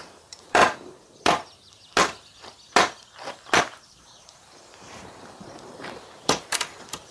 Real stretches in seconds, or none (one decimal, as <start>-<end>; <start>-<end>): 0.6-3.6